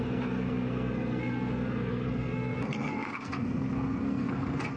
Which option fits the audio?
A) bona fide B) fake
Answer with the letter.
B